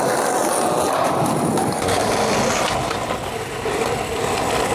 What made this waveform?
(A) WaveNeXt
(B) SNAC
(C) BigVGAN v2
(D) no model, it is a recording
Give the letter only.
D